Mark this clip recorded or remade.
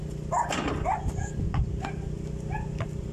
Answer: recorded